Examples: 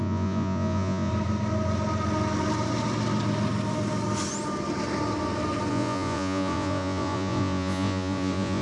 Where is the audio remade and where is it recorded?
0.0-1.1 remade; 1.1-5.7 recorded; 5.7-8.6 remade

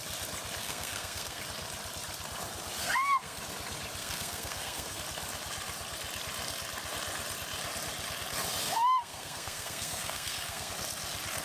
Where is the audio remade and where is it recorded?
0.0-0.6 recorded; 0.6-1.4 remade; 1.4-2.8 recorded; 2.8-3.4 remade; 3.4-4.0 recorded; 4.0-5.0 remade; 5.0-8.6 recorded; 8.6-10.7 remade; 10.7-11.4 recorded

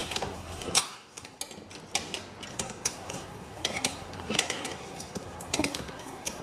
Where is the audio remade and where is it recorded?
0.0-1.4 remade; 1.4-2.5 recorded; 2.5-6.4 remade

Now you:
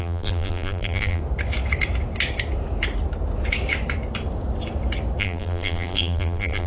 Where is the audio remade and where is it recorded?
0.0-1.2 remade; 1.2-5.2 recorded; 5.2-6.7 remade

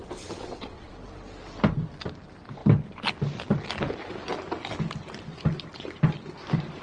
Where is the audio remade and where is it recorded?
0.0-0.9 remade; 0.9-6.8 recorded

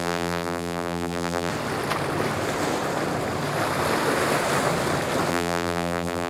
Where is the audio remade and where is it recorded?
0.0-1.5 remade; 1.5-5.3 recorded; 5.3-6.3 remade